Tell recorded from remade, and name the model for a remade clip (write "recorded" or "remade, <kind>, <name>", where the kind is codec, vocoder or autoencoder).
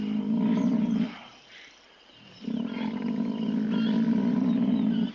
recorded